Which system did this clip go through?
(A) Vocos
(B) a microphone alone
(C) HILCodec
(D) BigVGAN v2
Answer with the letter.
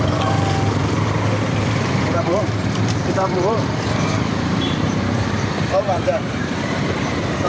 D